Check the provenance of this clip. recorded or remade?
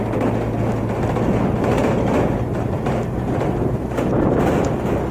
recorded